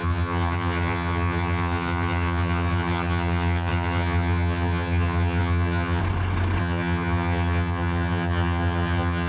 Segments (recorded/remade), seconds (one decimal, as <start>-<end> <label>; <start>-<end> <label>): 0.0-6.0 remade; 6.0-6.6 recorded; 6.6-9.3 remade